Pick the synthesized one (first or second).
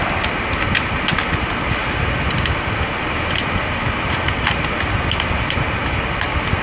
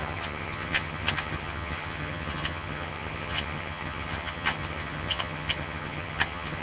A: second